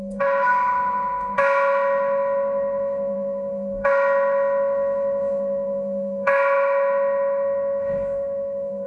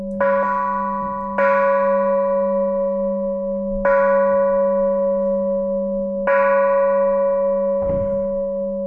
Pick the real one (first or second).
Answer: second